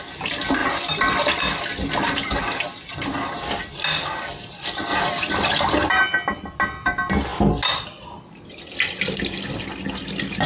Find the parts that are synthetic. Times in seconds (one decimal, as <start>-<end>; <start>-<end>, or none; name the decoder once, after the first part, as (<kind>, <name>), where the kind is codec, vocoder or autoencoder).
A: none